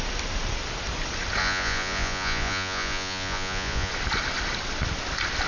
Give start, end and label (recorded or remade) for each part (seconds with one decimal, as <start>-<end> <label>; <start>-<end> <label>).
0.0-1.4 recorded; 1.4-3.9 remade; 3.9-5.5 recorded